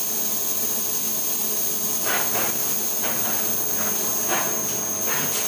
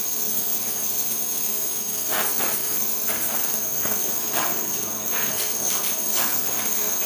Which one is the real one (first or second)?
first